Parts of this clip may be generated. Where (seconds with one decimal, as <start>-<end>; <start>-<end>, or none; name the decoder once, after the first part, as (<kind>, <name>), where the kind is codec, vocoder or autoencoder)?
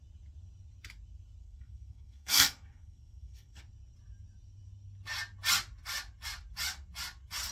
1.4-3.6 (codec, SNAC)